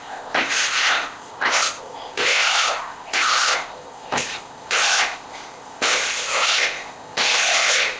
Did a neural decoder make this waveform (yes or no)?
yes